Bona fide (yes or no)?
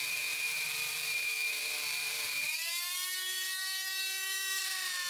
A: no